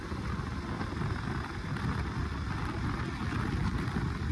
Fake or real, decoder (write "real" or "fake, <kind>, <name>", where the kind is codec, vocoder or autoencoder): real